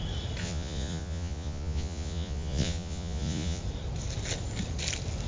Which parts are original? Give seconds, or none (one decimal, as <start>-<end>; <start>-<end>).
0.0-0.4; 3.6-5.3

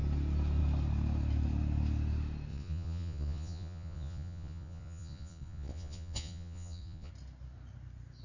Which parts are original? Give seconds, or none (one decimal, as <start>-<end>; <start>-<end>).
0.0-2.5; 7.1-8.2

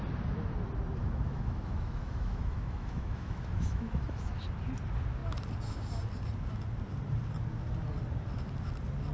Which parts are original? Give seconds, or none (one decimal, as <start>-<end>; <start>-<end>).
0.0-1.0; 4.6-9.1

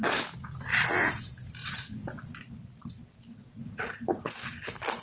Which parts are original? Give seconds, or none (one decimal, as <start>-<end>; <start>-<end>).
0.0-0.7; 1.2-1.6; 2.5-3.3; 4.2-5.0

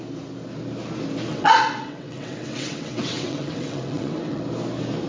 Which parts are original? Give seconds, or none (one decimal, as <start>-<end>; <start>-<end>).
0.0-1.3; 4.4-5.1